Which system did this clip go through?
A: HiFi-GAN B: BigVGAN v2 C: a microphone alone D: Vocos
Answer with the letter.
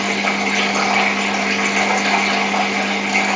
C